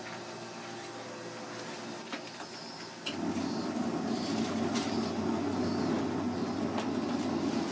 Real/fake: real